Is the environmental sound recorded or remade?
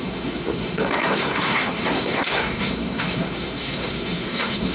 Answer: remade